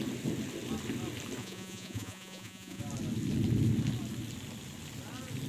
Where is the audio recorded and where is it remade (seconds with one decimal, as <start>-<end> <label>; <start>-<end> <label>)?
0.0-1.4 recorded; 1.4-2.8 remade; 2.8-5.5 recorded